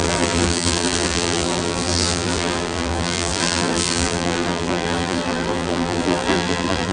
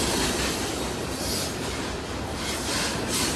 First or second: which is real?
second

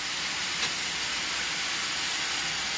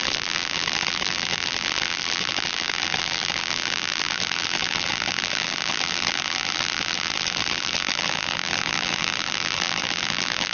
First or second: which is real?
first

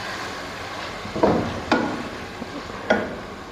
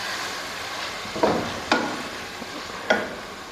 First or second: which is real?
first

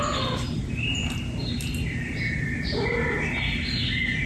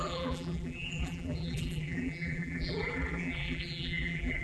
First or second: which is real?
first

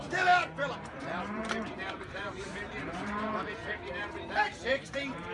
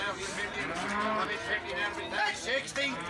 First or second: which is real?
second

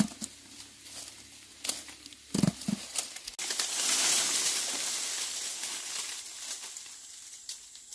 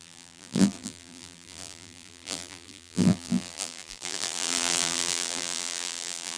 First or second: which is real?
first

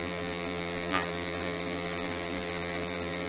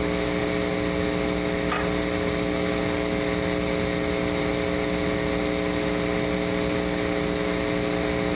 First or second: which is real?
second